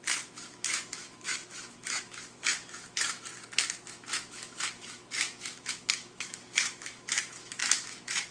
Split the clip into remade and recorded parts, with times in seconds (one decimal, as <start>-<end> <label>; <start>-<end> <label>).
0.0-3.3 remade; 3.3-3.9 recorded; 3.9-8.3 remade